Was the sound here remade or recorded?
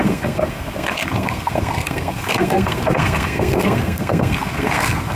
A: remade